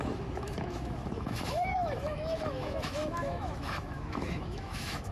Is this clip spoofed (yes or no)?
yes